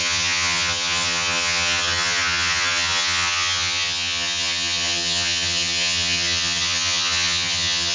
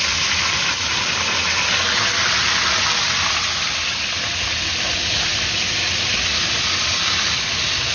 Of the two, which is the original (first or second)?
second